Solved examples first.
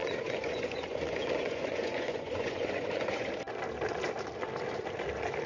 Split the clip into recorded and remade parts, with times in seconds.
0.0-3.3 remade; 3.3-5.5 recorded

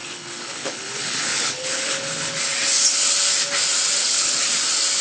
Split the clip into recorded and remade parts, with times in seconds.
0.0-2.4 remade; 2.4-4.0 recorded; 4.0-4.5 remade; 4.5-5.0 recorded

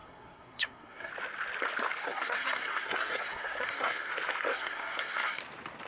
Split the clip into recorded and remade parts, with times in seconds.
0.0-1.1 remade; 1.1-2.0 recorded; 2.0-4.1 remade; 4.1-4.5 recorded; 4.5-5.4 remade; 5.4-5.9 recorded